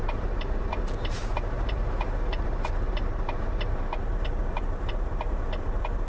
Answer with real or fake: fake